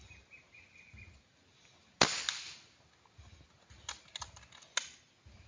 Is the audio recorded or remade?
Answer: recorded